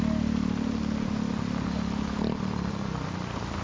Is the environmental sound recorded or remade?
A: recorded